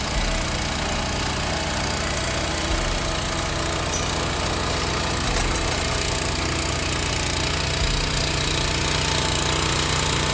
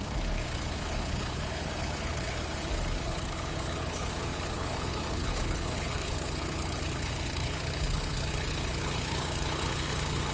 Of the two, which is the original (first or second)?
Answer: first